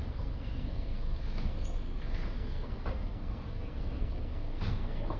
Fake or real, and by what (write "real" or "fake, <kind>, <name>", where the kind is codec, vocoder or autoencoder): fake, codec, SNAC